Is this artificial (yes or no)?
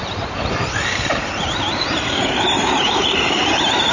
yes